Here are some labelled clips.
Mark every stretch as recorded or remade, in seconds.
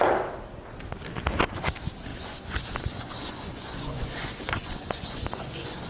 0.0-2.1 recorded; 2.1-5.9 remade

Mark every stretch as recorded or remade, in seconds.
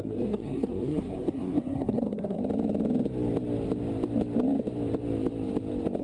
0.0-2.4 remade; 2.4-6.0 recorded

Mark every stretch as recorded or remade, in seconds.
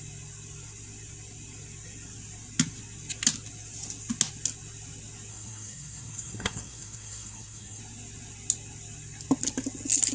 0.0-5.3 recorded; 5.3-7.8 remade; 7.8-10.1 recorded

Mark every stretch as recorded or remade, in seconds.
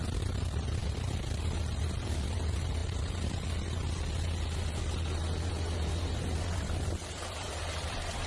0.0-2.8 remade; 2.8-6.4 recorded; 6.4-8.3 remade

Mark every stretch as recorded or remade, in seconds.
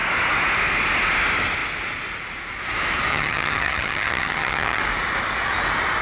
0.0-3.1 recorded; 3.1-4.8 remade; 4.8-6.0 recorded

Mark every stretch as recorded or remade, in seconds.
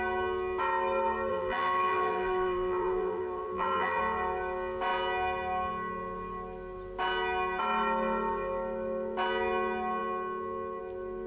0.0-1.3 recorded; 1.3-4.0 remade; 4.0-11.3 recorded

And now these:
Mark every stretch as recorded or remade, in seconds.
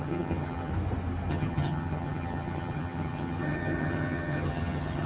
0.0-0.7 remade; 0.7-1.3 recorded; 1.3-5.1 remade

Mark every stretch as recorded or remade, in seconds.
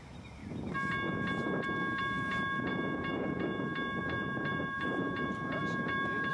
0.0-0.4 remade; 0.4-2.0 recorded; 2.0-6.3 remade